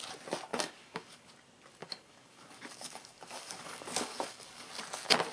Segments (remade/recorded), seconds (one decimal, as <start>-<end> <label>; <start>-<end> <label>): 0.0-0.5 recorded; 0.5-1.3 remade; 1.3-1.8 recorded; 1.8-4.7 remade; 4.7-5.3 recorded